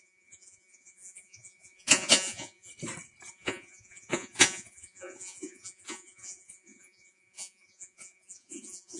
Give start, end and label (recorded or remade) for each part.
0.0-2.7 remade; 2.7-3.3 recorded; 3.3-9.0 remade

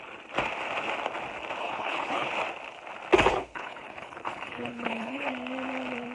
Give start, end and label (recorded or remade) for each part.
0.0-1.6 recorded; 1.6-2.3 remade; 2.3-3.3 recorded; 3.3-5.3 remade; 5.3-6.1 recorded

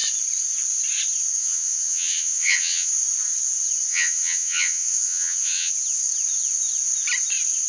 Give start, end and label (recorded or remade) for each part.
0.0-1.4 recorded; 1.4-2.9 remade; 2.9-3.9 recorded; 3.9-5.7 remade; 5.7-7.7 recorded

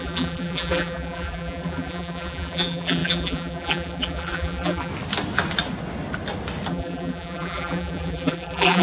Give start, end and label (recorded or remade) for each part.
0.0-4.9 remade; 4.9-6.7 recorded; 6.7-8.8 remade

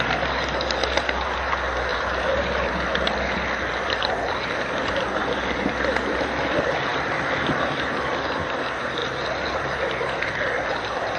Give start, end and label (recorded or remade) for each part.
0.0-1.9 recorded; 1.9-2.7 remade; 2.7-11.2 recorded

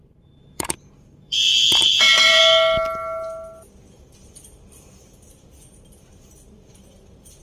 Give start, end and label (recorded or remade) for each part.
0.0-2.4 remade; 2.4-3.9 recorded; 3.9-7.4 remade